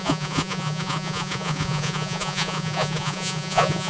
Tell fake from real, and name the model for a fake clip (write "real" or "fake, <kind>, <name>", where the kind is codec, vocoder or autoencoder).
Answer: fake, vocoder, Vocos